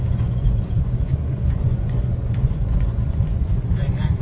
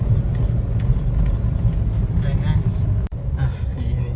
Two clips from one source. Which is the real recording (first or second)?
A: second